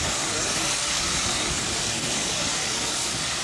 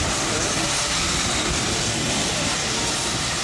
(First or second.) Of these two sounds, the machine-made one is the first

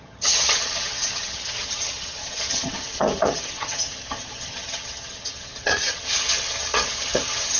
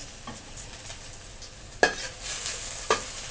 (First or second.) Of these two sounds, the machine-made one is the first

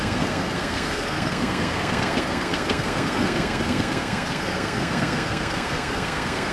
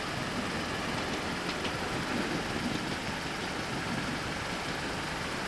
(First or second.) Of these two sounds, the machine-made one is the first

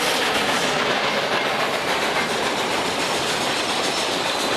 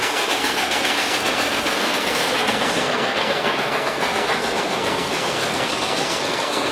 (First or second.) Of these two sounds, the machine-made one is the second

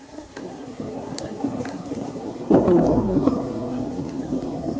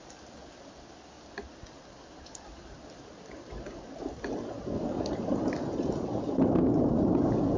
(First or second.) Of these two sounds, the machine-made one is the first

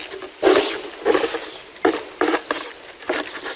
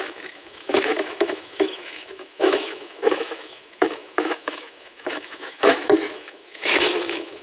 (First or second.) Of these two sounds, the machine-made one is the second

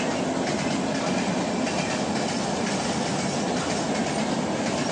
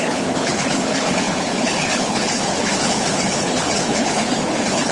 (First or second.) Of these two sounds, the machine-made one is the second